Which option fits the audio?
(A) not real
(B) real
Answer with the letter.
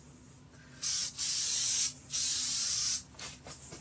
B